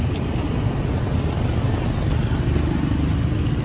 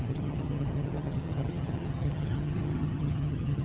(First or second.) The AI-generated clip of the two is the second